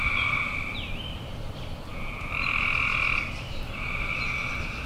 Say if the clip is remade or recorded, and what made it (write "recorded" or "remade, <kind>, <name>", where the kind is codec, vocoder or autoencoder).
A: recorded